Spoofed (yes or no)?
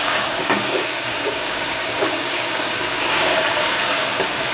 yes